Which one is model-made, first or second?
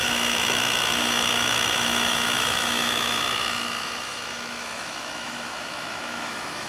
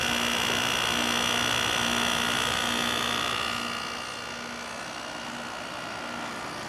first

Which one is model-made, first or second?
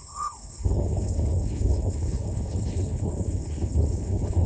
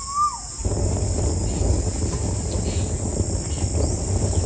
first